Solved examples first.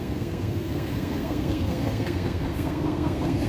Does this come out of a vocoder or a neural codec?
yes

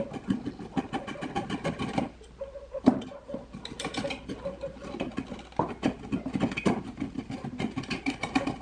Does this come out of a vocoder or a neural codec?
no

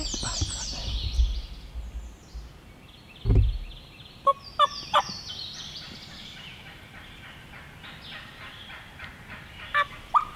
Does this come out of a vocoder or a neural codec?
no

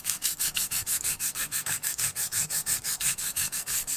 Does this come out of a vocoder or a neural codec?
yes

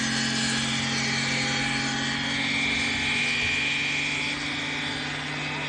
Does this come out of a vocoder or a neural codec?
no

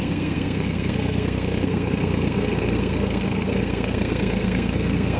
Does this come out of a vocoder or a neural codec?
yes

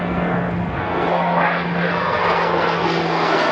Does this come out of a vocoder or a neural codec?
yes